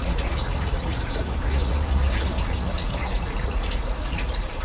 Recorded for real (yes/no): no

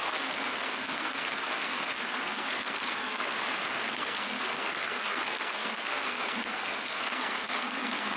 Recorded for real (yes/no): no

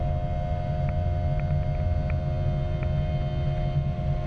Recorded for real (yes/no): yes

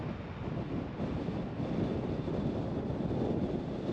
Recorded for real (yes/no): yes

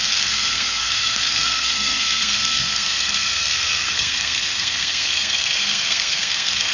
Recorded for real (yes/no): no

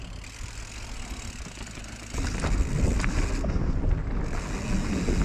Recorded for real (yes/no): yes